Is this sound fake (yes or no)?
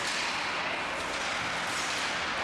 no